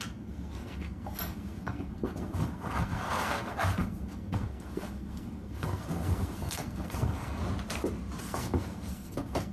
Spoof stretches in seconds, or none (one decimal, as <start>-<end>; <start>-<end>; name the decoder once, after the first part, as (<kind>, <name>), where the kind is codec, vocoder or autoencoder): 0.0-7.4 (codec, SNAC); 8.2-9.5